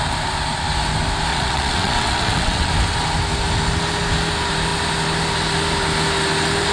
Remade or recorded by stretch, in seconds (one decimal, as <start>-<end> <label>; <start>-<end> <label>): 0.0-1.3 recorded; 1.3-2.7 remade; 2.7-6.7 recorded